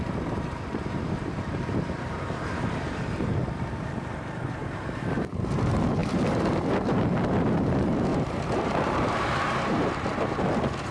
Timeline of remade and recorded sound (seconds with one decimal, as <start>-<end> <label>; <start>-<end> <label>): 0.0-10.9 remade